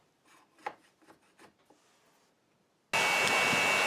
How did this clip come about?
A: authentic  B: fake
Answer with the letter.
A